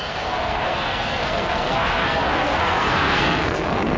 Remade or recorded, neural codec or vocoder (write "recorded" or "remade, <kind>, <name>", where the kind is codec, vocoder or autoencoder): remade, codec, SNAC